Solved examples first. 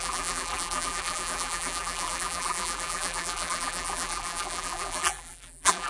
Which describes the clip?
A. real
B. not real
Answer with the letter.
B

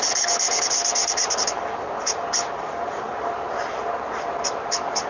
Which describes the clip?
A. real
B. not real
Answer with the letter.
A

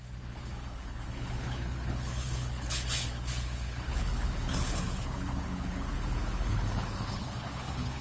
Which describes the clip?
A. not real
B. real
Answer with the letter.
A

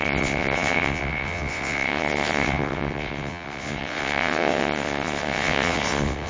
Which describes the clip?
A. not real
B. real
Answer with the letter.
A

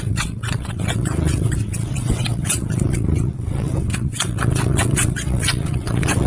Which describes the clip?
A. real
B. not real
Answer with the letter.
B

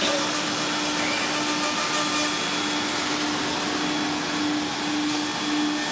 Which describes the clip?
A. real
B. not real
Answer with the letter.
A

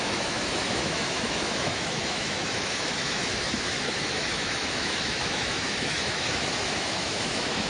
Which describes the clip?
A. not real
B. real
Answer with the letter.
A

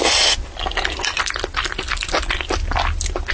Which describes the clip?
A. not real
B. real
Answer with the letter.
B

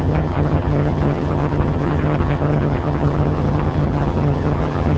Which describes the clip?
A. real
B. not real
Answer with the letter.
B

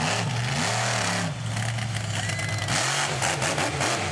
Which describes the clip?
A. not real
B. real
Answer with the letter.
B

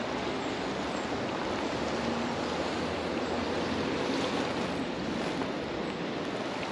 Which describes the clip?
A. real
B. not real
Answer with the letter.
A